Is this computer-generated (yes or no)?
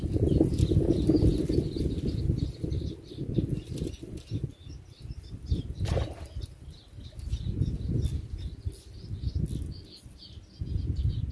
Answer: no